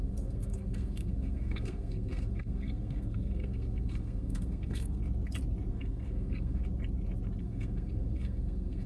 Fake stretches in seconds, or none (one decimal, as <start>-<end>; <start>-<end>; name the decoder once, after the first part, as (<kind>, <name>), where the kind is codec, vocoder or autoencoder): 0.0-5.0 (codec, SNAC); 5.7-6.6; 7.4-8.9